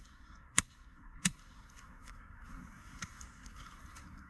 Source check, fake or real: fake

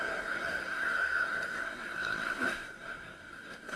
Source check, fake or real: fake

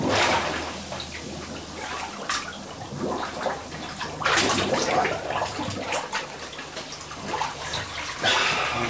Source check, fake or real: real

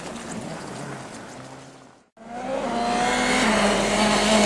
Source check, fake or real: real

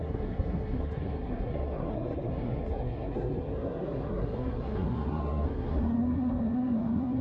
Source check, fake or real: fake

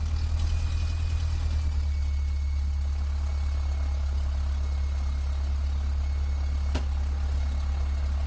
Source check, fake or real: real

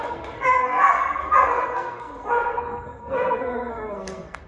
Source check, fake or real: fake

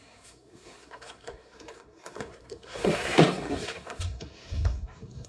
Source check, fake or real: fake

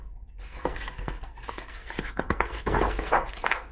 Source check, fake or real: fake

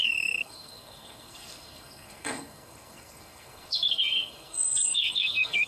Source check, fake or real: fake